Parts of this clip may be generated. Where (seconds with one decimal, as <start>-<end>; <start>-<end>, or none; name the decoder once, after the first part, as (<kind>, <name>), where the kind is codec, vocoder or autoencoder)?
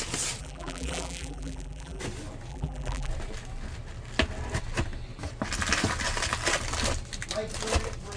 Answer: 0.4-2.0 (vocoder, BigVGAN v2); 2.5-3.1